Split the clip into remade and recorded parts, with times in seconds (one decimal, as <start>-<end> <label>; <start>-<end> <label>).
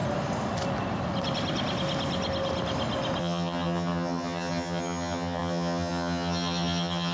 0.0-3.2 recorded; 3.2-7.1 remade